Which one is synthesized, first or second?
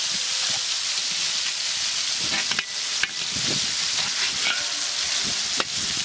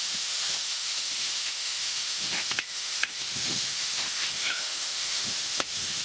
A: second